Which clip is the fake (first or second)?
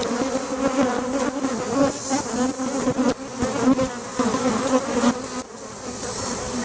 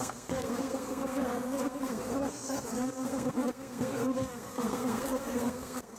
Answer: second